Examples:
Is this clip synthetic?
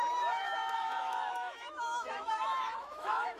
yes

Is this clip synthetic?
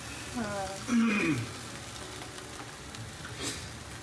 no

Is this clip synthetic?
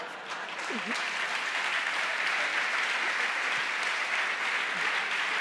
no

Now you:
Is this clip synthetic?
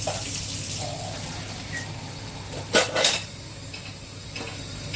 no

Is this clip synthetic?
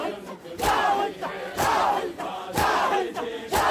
no